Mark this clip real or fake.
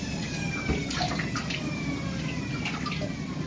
real